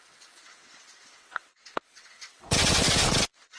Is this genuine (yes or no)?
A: no